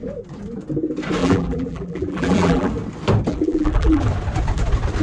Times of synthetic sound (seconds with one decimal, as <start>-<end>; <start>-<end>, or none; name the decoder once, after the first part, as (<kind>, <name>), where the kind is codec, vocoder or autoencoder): 1.2-2.7 (vocoder, BigVGAN v2); 3.3-4.0